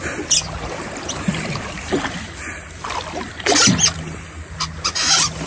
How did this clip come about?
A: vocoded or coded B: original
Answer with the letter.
B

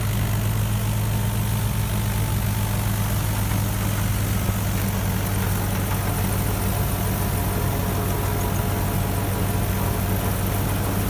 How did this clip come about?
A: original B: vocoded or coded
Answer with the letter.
A